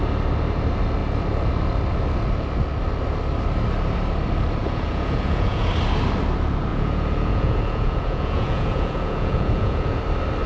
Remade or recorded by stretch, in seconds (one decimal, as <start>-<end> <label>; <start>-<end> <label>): 0.0-4.6 recorded; 4.6-5.7 remade; 5.7-6.7 recorded; 6.7-10.0 remade; 10.0-10.5 recorded